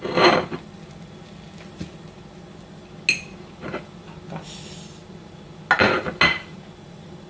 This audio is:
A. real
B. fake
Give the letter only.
A